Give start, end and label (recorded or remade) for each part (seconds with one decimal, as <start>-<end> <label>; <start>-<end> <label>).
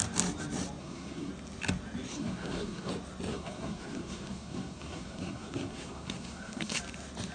0.0-0.8 recorded; 0.8-1.3 remade; 1.3-2.1 recorded; 2.1-2.9 remade; 2.9-3.3 recorded; 3.3-6.8 remade; 6.8-7.3 recorded